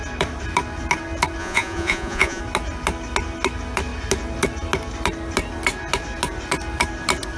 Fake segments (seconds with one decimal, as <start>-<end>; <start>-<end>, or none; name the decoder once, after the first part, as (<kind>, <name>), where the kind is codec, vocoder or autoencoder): 1.4-2.4 (vocoder, Vocos)